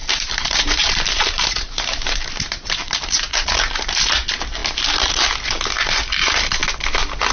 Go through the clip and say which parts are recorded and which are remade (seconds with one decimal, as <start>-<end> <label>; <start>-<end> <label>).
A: 0.0-3.2 remade; 3.2-7.3 recorded

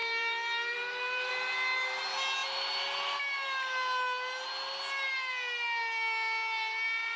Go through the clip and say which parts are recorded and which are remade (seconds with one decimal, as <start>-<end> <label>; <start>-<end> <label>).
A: 0.0-1.3 remade; 1.3-7.2 recorded

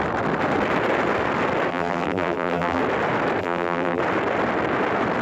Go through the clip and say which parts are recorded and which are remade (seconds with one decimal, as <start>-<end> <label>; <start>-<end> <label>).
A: 0.0-1.7 recorded; 1.7-2.8 remade; 2.8-3.4 recorded; 3.4-4.0 remade; 4.0-5.2 recorded

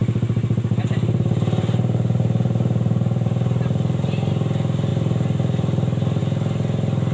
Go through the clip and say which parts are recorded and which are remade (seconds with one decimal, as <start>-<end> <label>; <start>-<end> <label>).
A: 0.0-4.3 remade; 4.3-4.9 recorded; 4.9-6.2 remade; 6.2-7.1 recorded